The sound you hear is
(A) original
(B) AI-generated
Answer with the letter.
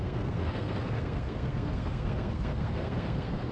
B